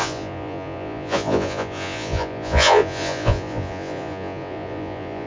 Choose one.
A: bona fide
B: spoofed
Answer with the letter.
B